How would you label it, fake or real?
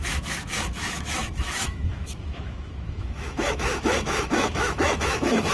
fake